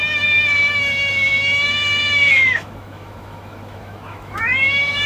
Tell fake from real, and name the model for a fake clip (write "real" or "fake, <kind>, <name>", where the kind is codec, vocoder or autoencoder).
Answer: fake, autoencoder, DAC-VAE